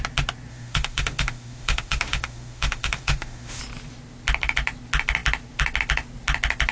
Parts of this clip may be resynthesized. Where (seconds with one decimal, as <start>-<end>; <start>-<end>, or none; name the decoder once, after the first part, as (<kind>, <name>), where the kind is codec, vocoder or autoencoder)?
0.5-3.6 (autoencoder, DAC-VAE)